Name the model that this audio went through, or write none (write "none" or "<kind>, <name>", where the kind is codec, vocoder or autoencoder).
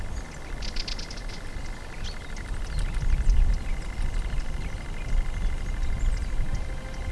none